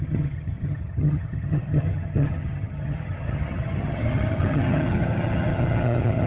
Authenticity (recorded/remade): remade